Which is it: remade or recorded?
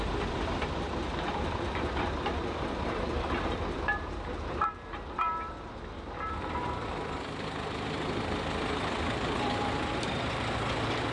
remade